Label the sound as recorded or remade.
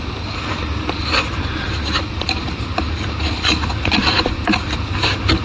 recorded